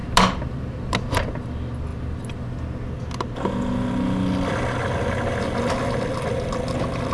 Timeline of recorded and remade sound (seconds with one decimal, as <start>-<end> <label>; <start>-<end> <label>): 0.0-7.1 recorded